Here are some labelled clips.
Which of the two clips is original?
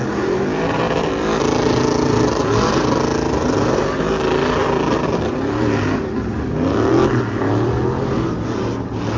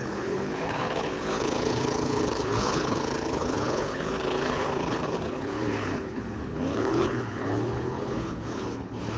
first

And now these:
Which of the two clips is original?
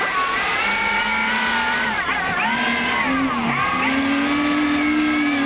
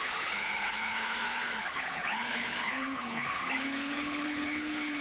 first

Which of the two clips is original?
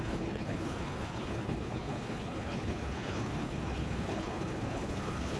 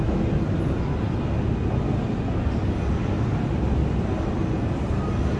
second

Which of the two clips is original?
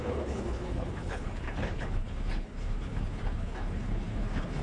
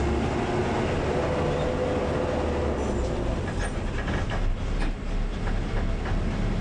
second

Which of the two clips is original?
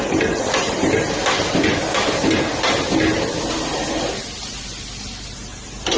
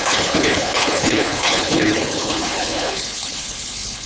first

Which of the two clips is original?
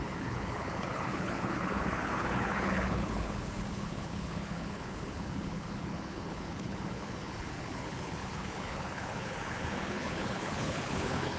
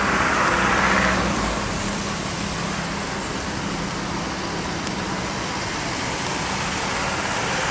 second